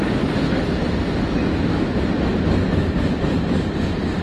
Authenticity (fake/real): real